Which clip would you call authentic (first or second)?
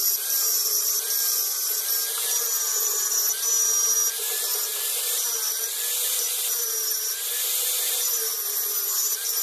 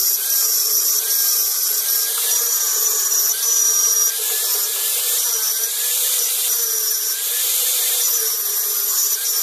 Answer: first